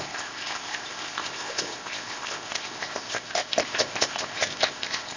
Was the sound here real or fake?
fake